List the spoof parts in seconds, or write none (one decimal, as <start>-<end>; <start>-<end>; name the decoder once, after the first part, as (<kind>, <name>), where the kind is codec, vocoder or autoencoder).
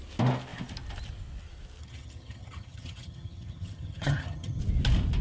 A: 1.8-4.6 (vocoder, HiFi-GAN)